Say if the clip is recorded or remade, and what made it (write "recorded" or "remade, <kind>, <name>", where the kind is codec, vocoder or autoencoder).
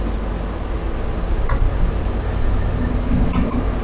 recorded